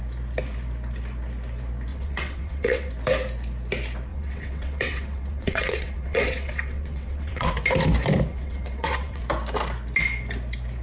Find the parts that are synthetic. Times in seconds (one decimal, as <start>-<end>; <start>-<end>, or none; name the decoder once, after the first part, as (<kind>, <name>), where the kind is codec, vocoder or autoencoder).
1.9-2.9 (vocoder, WaveNeXt); 4.1-7.5; 8.3-9.2